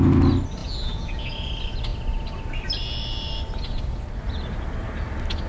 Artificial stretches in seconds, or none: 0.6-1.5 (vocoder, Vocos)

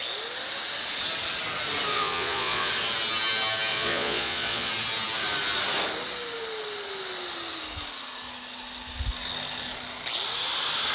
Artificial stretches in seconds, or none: 1.9-2.7 (vocoder, Vocos); 3.7-4.7

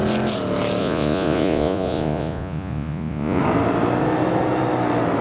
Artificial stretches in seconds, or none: 0.8-3.4 (vocoder, Vocos)

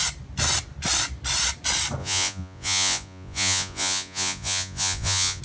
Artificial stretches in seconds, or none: 2.0-5.4 (vocoder, Vocos)

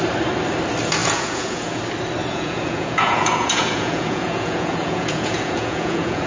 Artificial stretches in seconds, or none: 1.0-1.8 (vocoder, Vocos); 2.2-6.3